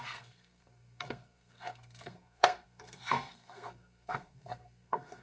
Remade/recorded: remade